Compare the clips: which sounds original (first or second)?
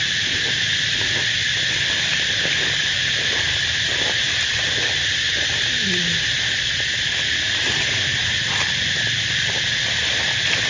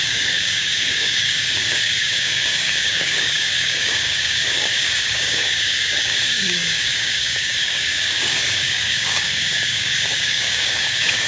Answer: first